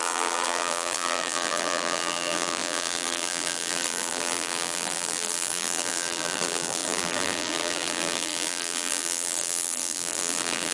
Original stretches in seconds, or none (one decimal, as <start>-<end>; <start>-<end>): none